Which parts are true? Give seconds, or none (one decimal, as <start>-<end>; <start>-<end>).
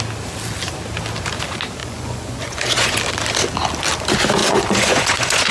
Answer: 0.0-1.8; 3.0-4.4